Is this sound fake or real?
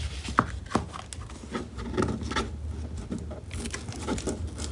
real